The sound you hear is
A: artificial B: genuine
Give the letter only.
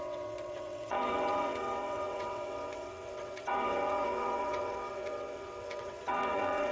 A